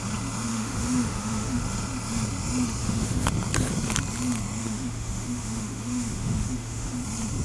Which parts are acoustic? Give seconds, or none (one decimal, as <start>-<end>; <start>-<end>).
0.0-0.5; 1.6-2.8; 3.3-4.6; 7.0-7.4